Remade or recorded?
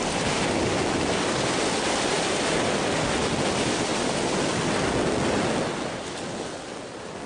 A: recorded